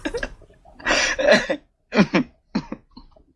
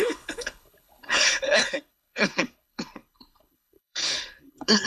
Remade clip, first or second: second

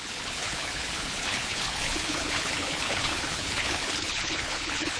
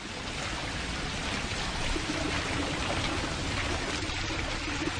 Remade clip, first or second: first